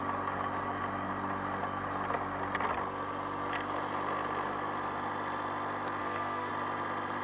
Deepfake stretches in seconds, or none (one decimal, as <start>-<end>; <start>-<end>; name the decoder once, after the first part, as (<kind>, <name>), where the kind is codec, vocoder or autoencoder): 6.0-6.5 (codec, SNAC)